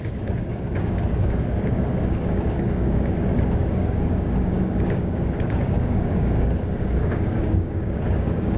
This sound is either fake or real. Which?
fake